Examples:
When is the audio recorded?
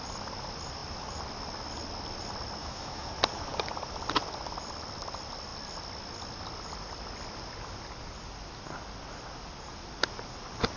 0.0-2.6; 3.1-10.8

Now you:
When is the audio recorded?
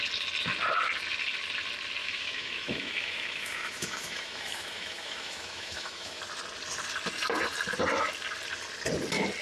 0.0-2.0; 6.2-9.4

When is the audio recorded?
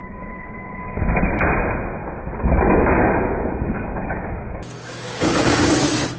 1.0-2.0; 5.7-6.2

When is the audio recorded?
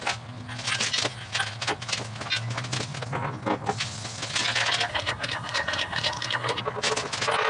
0.0-4.9; 6.6-7.5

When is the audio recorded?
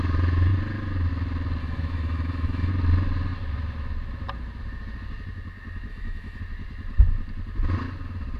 0.0-1.6; 2.7-5.9; 6.4-8.4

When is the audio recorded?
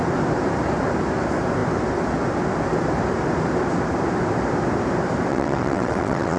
0.0-5.3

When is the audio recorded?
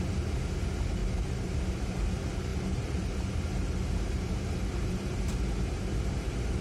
0.0-1.0; 1.6-2.5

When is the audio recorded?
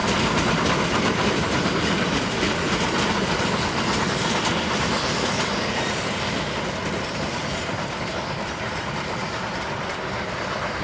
0.0-10.8